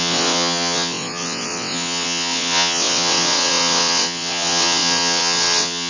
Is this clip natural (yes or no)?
no